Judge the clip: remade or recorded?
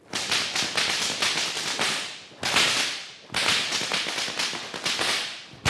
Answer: recorded